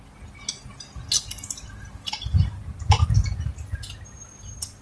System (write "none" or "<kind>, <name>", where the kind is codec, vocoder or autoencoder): none